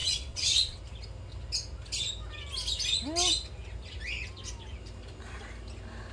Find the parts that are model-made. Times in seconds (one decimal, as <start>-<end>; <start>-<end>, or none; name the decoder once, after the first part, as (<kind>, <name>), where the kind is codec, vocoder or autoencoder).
0.0-0.8 (vocoder, WaveNeXt)